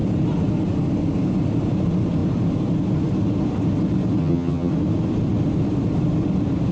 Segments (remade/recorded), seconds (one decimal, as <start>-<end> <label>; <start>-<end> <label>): 0.0-4.2 recorded; 4.2-4.7 remade; 4.7-6.7 recorded